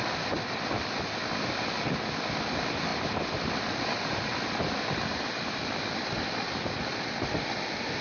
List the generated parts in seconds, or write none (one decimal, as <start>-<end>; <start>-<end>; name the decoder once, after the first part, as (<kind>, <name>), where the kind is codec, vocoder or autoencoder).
none